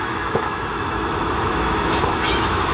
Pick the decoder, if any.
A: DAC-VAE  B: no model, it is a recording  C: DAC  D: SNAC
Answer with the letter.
A